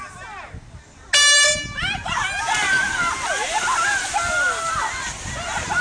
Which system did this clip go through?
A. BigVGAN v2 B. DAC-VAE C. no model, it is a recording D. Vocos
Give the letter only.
C